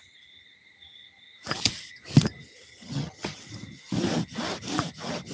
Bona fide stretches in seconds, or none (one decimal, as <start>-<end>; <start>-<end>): 0.0-2.7; 3.4-5.3